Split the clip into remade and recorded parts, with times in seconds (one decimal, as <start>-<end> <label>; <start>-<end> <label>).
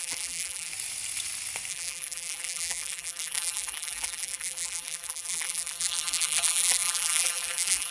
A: 0.0-0.7 remade; 0.7-1.7 recorded; 1.7-7.9 remade